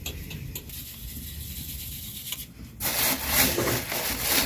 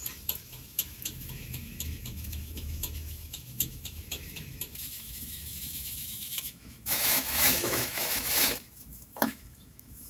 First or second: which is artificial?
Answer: second